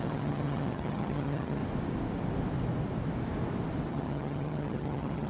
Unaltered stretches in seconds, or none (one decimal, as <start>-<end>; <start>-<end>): 1.6-3.9

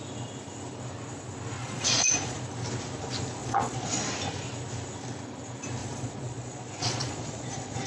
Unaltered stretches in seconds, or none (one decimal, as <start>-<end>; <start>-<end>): 0.0-1.6; 2.4-3.4; 4.0-5.8

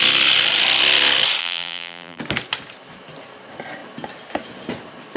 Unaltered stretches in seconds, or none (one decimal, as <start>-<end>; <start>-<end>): 0.0-1.4; 2.2-5.2

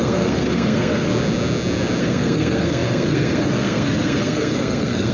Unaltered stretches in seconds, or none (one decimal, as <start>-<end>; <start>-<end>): 1.1-2.0

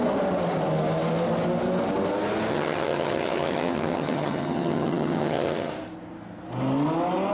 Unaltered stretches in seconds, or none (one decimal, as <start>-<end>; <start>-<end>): 0.0-2.5; 5.7-7.3

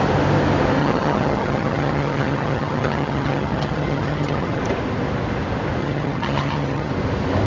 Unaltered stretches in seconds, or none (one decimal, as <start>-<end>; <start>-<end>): 0.0-0.8; 4.6-5.8; 6.9-7.5

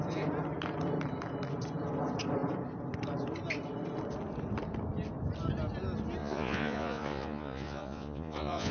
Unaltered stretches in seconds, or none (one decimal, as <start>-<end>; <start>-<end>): 0.0-6.2

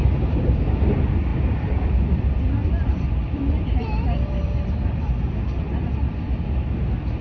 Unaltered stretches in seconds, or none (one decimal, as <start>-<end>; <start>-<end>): 0.0-1.3; 5.6-7.2